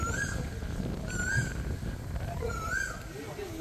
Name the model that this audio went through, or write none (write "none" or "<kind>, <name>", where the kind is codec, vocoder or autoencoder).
none